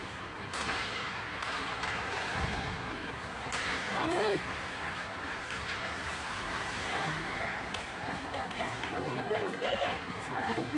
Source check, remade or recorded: remade